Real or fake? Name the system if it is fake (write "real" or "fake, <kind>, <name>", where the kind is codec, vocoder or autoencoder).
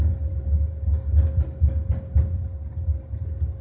real